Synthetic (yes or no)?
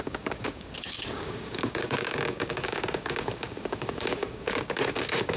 yes